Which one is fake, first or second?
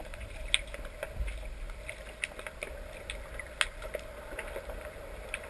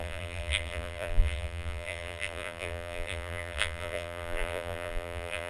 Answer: second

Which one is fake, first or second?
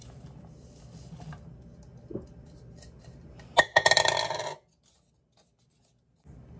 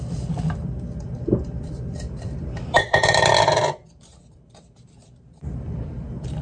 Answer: second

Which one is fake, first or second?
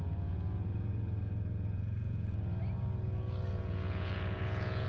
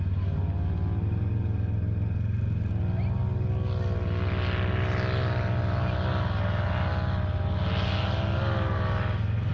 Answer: first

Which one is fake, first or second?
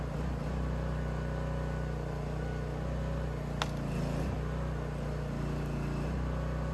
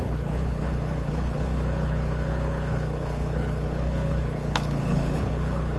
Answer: second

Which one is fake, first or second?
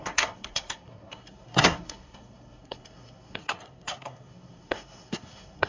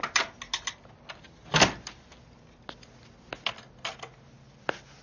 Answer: first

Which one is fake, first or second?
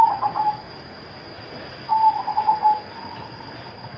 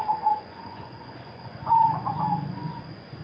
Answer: second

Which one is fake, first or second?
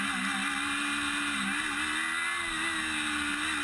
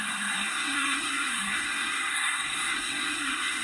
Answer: second